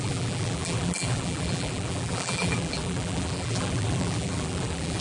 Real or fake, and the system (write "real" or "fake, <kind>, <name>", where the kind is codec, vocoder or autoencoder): fake, vocoder, BigVGAN v2